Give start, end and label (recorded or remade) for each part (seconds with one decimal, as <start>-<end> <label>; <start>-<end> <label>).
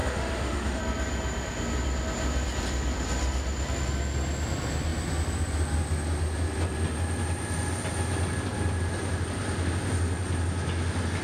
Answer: 0.0-0.8 remade; 0.8-11.2 recorded